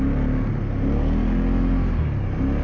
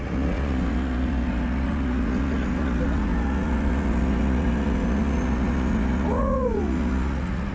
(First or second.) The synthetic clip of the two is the second